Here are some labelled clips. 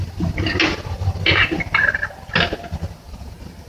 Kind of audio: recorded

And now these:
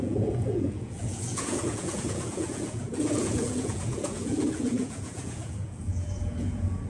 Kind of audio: remade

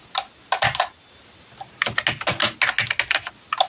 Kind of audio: recorded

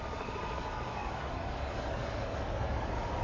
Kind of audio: remade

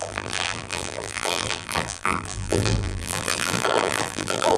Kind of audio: remade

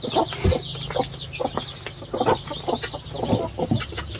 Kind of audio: recorded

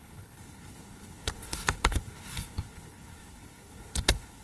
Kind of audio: remade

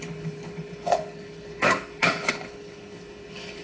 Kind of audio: remade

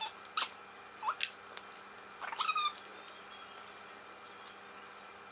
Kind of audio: recorded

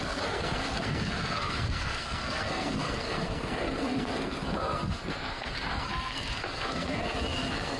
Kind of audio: remade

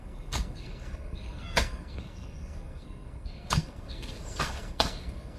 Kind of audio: remade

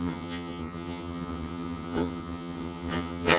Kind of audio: remade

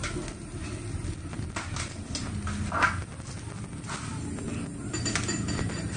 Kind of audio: recorded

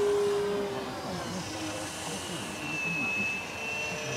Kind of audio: recorded